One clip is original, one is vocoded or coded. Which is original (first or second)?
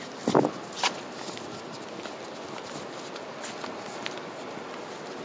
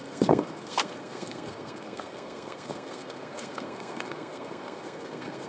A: first